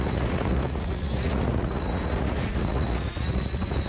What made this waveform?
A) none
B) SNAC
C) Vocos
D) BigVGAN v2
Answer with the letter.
C